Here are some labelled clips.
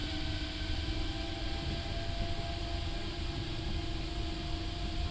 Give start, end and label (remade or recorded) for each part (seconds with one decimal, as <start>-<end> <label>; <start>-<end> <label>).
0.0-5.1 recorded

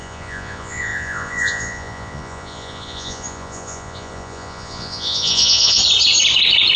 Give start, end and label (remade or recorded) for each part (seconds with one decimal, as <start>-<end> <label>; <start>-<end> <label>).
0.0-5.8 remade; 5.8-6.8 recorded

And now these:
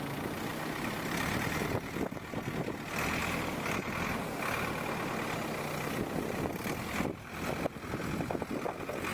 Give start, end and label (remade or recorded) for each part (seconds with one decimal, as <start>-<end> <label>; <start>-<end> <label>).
0.0-0.5 recorded; 0.5-1.9 remade; 1.9-9.1 recorded

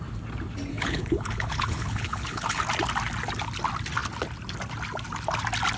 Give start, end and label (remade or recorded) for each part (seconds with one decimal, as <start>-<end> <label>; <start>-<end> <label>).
0.0-0.7 recorded; 0.7-2.6 remade; 2.6-5.8 recorded

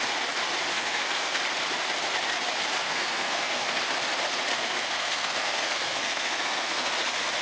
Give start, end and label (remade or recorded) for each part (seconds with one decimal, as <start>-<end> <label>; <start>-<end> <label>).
0.0-0.7 recorded; 0.7-1.4 remade; 1.4-2.8 recorded; 2.8-3.8 remade; 3.8-4.5 recorded; 4.5-6.9 remade; 6.9-7.4 recorded

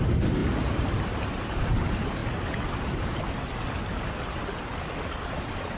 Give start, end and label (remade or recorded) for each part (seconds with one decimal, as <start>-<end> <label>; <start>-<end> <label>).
0.0-5.8 recorded